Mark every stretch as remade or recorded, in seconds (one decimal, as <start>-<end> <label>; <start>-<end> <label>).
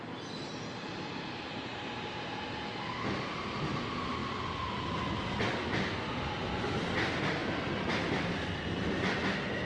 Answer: 0.0-4.2 recorded; 4.2-5.0 remade; 5.0-9.7 recorded